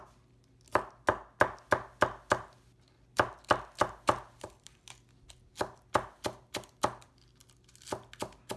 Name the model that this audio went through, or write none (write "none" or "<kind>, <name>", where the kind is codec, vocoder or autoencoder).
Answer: none